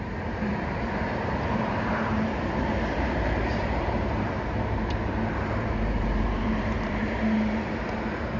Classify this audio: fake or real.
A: fake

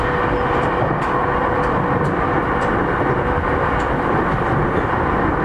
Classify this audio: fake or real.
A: real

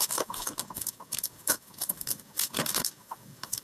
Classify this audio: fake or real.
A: fake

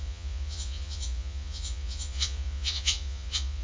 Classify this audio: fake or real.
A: fake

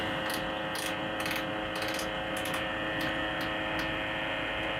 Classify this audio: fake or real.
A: real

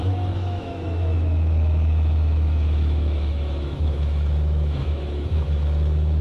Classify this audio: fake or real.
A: fake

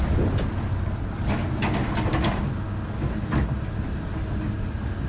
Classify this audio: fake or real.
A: real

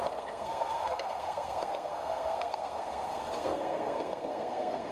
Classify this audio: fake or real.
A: fake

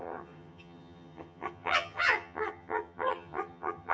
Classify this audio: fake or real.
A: fake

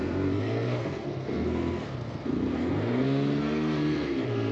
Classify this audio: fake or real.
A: fake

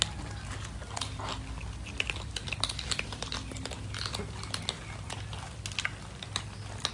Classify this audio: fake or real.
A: real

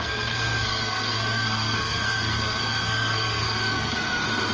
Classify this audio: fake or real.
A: fake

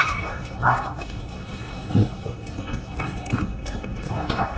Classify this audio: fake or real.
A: fake